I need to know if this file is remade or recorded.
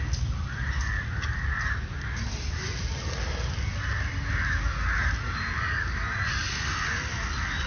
recorded